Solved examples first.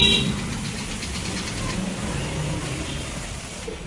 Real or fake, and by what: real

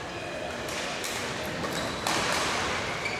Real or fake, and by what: real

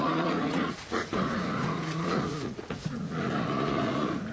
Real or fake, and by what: fake, vocoder, Vocos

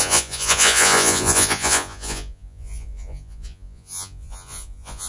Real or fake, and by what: fake, vocoder, Vocos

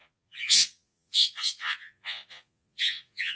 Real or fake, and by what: fake, vocoder, Vocos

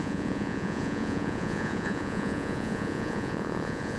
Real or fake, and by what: fake, vocoder, Vocos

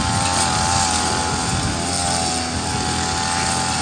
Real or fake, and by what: real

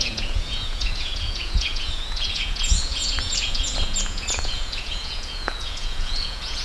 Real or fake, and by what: fake, vocoder, Vocos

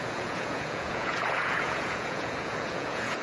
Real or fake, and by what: fake, vocoder, Vocos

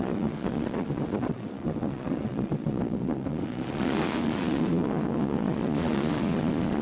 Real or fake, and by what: fake, vocoder, Vocos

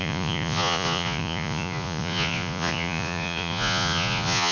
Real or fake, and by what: fake, vocoder, Vocos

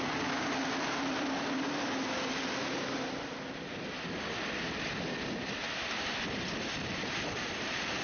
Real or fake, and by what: real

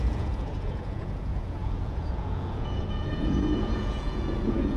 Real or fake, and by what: fake, vocoder, Vocos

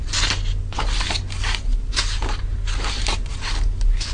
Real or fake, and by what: real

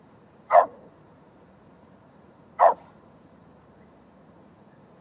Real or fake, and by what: fake, vocoder, Vocos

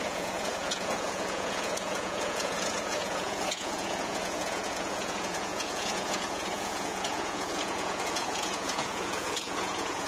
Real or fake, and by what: fake, vocoder, Vocos